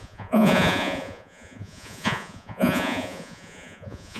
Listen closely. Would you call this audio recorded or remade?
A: remade